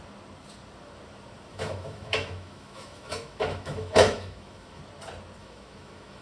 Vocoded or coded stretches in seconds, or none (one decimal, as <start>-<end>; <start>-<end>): 1.5-4.8; 5.4-6.2